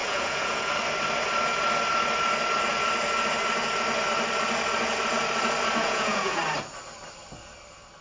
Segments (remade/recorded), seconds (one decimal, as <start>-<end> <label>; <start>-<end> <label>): 0.0-0.7 remade; 0.7-5.8 recorded; 5.8-6.4 remade; 6.4-8.0 recorded